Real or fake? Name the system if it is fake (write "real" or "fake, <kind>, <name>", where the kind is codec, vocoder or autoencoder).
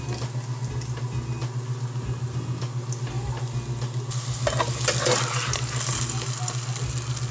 real